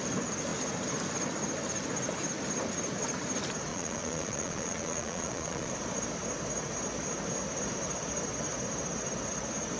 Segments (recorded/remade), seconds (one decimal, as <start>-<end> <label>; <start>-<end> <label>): 0.0-3.7 recorded; 3.7-5.7 remade; 5.7-9.8 recorded